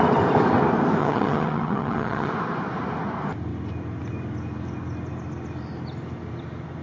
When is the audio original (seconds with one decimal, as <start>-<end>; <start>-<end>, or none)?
0.0-1.0; 2.3-6.8